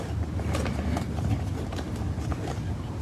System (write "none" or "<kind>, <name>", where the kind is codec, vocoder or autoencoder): none